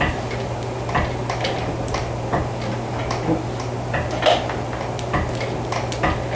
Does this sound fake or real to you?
real